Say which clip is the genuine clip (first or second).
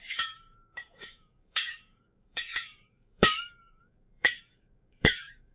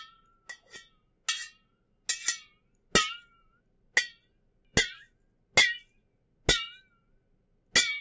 second